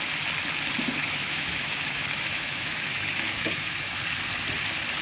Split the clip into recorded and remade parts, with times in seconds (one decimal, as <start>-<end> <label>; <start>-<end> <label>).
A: 0.0-1.0 recorded; 1.0-4.0 remade; 4.0-5.0 recorded